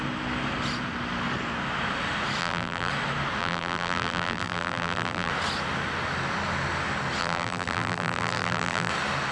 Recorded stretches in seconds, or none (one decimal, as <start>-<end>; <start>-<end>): 0.0-2.4; 2.9-3.4; 5.3-7.2; 8.9-9.3